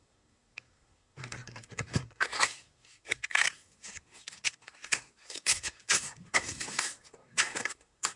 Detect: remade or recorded remade